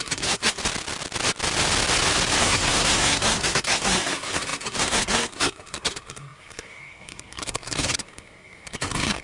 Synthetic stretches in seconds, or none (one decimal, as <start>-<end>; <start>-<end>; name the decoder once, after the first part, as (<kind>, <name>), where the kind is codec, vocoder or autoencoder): 0.0-0.6 (codec, SNAC); 2.4-9.2